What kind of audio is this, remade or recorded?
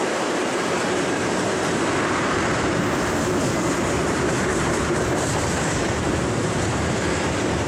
remade